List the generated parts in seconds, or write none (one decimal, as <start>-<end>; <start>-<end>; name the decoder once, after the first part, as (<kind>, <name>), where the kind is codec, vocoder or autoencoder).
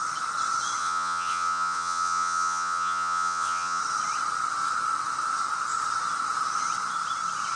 0.8-3.8 (vocoder, Vocos)